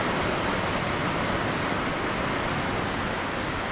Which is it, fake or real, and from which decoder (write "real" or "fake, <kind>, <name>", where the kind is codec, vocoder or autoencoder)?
real